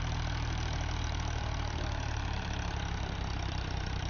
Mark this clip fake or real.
fake